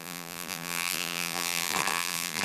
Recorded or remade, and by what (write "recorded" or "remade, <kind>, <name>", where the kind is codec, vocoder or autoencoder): remade, vocoder, BigVGAN v2